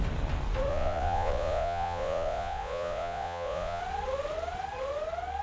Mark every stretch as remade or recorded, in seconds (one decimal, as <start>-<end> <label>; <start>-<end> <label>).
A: 0.0-0.7 recorded; 0.7-3.8 remade; 3.8-5.4 recorded